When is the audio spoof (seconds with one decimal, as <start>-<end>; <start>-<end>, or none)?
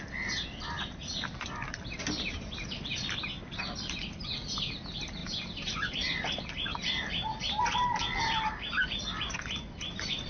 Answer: none